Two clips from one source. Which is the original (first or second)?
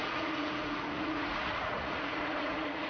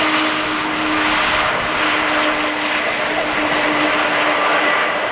second